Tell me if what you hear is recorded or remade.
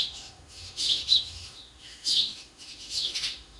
remade